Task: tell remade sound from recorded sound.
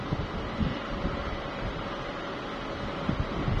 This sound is recorded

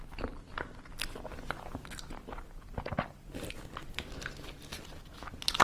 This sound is recorded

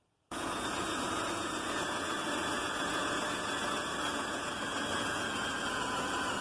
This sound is remade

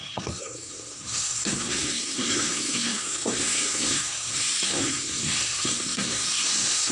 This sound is remade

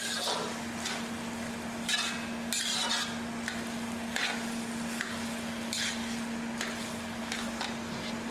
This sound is recorded